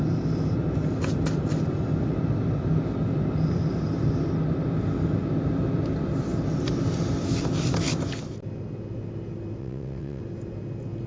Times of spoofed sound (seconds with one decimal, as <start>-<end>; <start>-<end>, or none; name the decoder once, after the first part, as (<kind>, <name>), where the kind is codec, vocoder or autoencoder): 9.6-10.2 (vocoder, WaveNeXt)